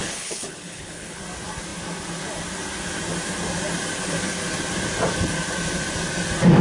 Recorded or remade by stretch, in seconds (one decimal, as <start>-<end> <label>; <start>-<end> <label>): 0.0-1.2 remade; 1.2-6.6 recorded